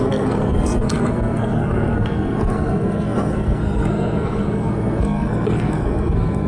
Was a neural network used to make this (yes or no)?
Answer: yes